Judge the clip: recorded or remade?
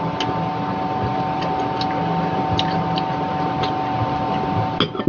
recorded